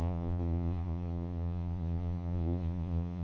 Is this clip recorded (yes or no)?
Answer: no